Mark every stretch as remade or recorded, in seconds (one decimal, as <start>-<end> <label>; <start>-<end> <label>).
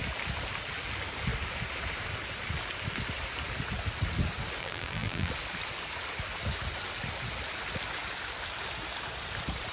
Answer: 0.0-4.6 recorded; 4.6-5.3 remade; 5.3-9.7 recorded